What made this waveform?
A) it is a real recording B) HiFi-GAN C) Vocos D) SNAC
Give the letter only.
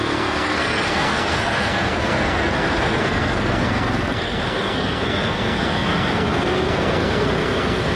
D